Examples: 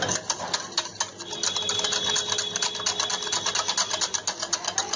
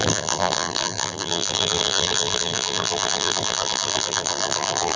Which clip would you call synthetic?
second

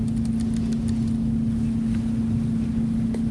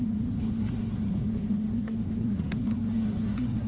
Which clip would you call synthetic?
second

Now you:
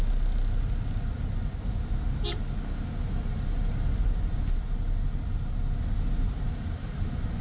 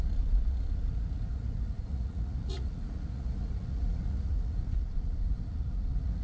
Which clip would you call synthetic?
second